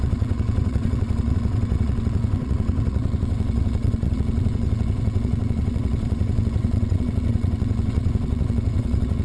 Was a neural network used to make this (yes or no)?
yes